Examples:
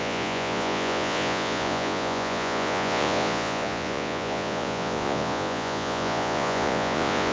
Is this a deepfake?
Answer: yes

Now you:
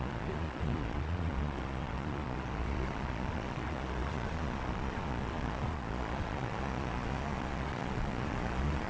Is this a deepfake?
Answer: yes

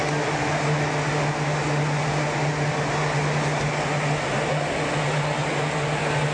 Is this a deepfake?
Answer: no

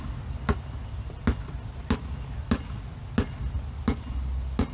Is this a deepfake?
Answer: no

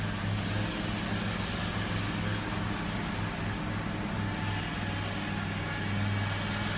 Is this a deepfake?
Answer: no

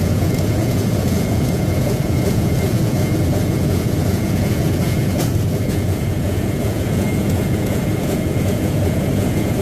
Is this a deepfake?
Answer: yes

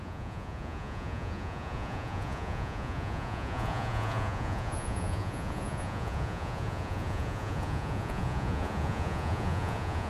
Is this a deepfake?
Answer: yes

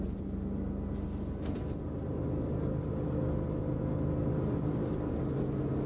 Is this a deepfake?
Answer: no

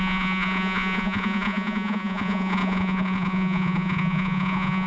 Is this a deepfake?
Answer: yes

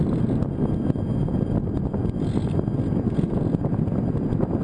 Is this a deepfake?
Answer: no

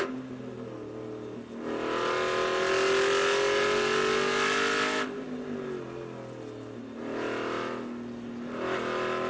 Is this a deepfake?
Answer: no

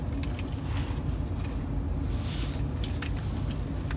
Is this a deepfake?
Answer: no